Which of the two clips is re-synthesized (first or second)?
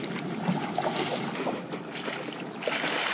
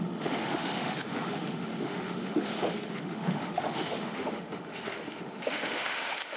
second